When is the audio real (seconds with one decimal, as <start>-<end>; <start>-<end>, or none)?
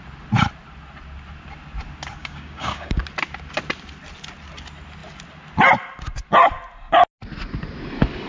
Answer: 0.0-2.2; 3.0-8.3